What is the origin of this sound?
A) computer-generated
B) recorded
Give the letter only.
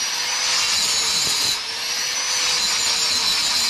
B